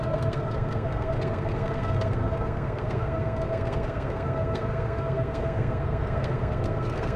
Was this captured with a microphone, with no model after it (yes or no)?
no